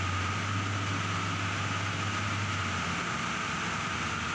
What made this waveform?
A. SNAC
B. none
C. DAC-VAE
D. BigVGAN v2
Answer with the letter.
B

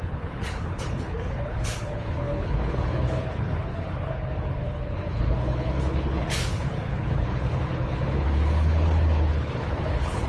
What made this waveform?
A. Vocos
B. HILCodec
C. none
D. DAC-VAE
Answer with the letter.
B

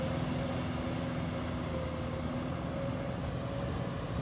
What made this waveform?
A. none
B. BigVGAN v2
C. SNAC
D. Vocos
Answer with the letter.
A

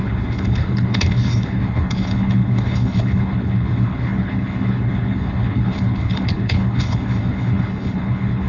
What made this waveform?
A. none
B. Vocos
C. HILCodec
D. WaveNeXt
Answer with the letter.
C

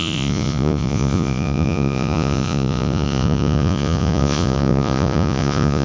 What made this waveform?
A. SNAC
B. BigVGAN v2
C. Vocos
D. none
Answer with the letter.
C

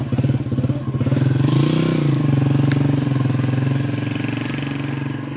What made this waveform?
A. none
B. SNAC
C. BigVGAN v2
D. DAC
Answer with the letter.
A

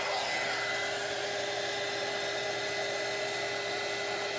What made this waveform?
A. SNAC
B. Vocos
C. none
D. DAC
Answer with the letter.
C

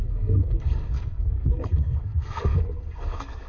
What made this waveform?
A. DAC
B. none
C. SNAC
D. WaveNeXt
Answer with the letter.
C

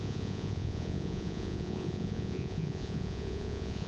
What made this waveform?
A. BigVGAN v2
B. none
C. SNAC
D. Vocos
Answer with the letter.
D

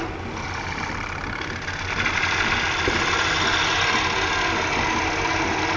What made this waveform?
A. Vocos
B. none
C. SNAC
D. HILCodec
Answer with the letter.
B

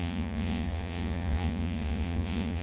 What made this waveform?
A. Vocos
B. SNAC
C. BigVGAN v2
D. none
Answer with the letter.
A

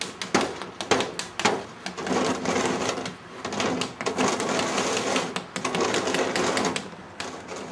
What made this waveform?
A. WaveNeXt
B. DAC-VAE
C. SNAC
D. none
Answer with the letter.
D